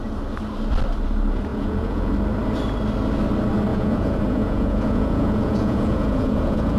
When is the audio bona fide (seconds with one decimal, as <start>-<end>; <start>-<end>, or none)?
0.0-1.5; 2.1-3.7